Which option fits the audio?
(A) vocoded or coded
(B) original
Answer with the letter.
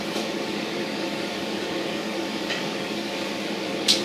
A